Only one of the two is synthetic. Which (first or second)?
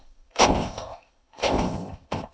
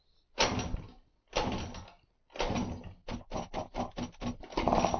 first